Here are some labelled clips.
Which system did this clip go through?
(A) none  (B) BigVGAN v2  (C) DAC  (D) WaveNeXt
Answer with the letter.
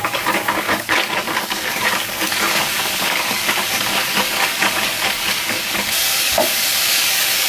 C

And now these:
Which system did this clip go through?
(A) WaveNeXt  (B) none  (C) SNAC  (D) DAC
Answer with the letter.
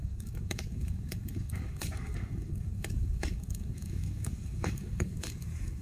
D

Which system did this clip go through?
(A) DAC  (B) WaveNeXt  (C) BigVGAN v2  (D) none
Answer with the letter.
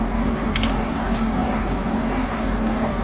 A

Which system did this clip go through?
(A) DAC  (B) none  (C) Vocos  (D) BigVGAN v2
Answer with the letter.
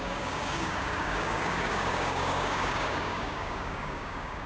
A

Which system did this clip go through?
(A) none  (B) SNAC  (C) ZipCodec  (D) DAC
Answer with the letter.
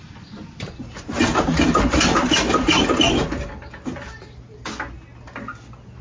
A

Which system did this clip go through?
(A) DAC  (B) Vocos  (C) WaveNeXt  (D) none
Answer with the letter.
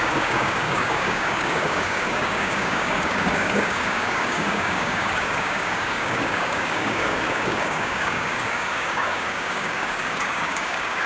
A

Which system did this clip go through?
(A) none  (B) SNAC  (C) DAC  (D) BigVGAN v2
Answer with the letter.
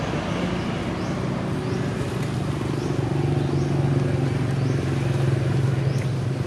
A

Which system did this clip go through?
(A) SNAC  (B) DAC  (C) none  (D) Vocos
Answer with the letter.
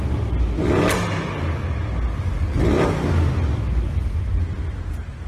C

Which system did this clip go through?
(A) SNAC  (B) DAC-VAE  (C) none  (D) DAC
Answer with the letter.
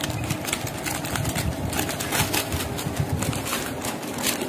C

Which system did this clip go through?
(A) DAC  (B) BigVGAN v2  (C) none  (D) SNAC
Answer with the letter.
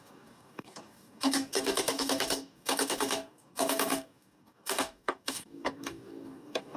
A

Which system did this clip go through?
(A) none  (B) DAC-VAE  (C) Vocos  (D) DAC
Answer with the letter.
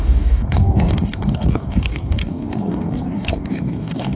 D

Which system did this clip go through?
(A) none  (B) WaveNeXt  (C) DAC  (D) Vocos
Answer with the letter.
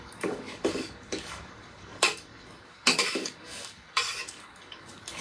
C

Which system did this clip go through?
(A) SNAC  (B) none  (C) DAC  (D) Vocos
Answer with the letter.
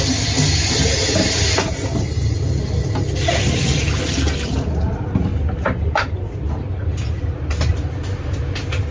B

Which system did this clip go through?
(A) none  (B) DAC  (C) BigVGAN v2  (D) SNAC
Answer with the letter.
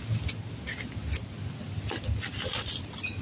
A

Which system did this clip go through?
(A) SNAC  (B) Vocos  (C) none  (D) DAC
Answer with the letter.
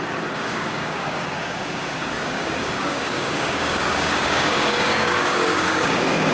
D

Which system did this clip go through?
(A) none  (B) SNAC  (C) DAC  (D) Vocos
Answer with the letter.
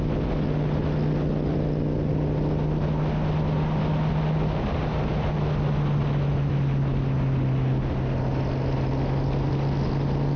A